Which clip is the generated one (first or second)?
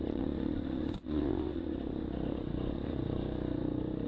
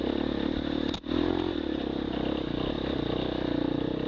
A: first